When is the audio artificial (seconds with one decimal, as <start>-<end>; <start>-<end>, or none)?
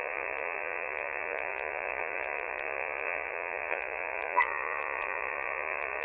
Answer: 0.0-6.0